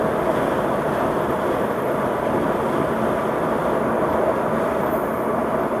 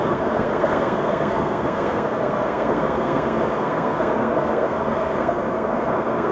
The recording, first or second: first